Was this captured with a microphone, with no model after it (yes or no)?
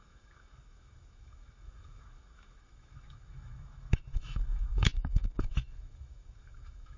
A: no